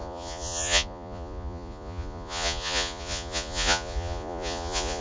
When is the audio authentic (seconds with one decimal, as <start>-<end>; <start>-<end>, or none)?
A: none